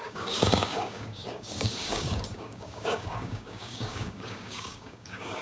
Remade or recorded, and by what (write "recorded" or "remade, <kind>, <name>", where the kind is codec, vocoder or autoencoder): remade, codec, DAC